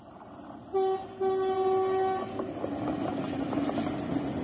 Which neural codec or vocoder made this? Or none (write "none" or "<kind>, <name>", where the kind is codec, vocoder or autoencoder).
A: none